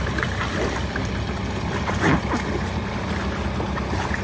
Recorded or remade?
recorded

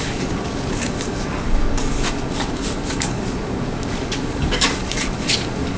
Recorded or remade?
remade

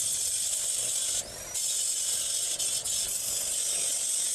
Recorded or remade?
recorded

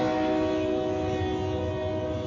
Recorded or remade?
recorded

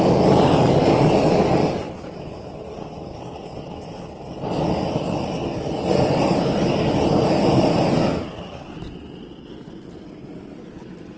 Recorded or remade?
recorded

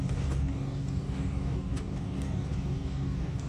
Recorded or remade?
remade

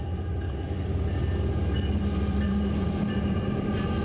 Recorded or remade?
recorded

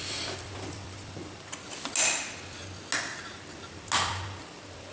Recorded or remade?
recorded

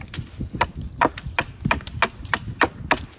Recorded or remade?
recorded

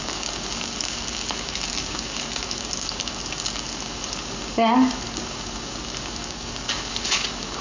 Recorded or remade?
remade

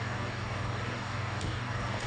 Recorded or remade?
remade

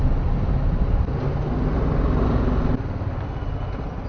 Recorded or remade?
recorded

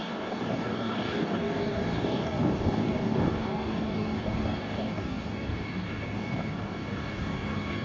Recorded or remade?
remade